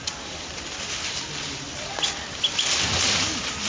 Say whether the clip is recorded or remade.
recorded